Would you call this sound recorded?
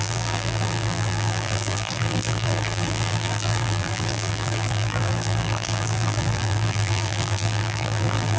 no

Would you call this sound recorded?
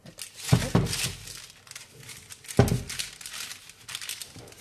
yes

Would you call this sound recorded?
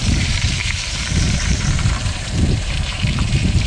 no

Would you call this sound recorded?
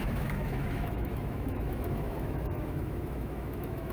no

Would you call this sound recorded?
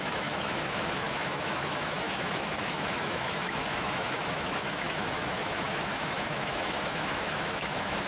no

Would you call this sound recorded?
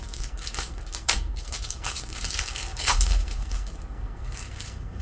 no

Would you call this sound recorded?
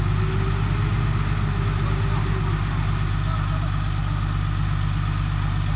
yes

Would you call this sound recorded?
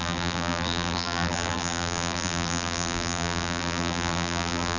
no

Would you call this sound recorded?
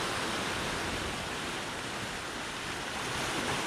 yes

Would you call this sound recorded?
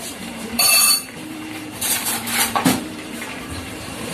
no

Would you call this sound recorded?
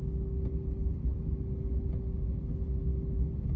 yes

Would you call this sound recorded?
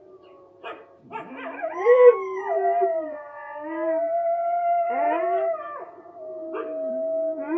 yes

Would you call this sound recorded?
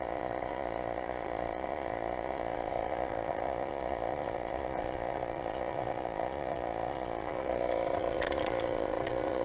no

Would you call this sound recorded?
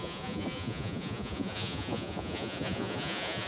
no